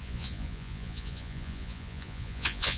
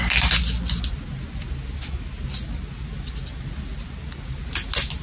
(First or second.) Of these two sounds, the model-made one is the first